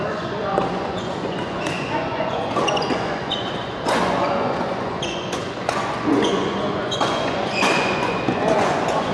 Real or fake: fake